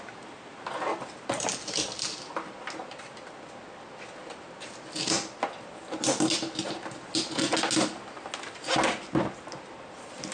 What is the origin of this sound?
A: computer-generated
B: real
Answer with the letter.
B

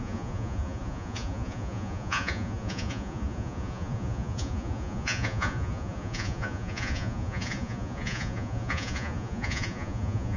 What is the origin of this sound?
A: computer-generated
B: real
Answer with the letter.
A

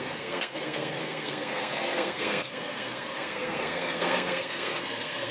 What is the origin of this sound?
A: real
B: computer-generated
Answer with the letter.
B